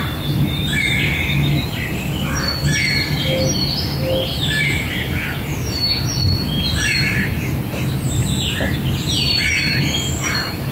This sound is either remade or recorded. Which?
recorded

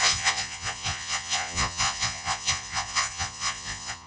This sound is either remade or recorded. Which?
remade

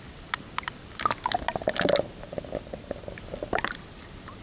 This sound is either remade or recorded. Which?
recorded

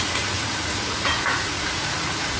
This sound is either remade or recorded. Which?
remade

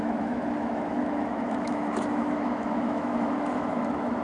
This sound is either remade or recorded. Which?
remade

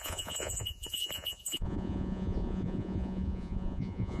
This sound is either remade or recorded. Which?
remade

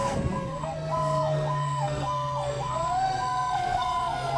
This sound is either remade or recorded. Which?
remade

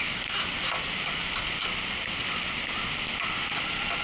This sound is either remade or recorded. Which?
recorded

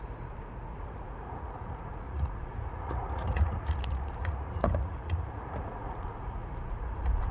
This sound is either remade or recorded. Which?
remade